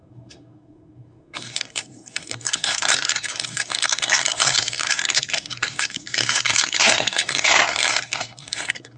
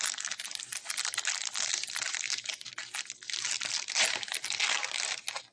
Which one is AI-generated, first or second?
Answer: first